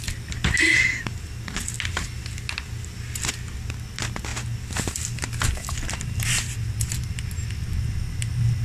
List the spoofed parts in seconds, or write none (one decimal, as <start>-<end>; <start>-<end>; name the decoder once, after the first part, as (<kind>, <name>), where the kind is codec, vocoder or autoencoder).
none